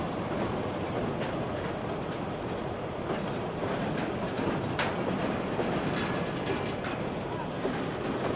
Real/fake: fake